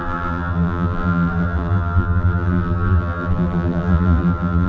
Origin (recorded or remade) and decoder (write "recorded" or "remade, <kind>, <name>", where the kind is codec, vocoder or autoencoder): remade, vocoder, BigVGAN v2